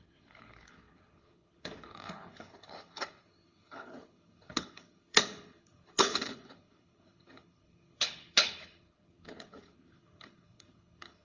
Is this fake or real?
fake